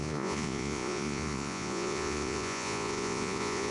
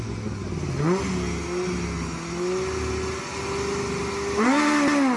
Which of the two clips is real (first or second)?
second